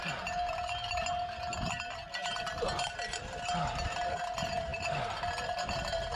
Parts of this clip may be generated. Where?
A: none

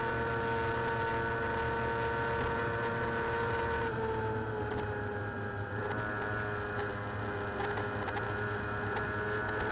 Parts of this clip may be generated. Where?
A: none

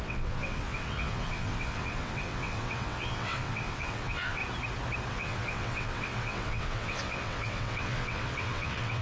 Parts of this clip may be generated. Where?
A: 0.0-4.4 (vocoder, WaveNeXt); 5.1-9.0

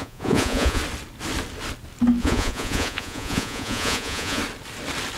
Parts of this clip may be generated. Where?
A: 0.0-0.8 (vocoder, Vocos); 2.2-4.4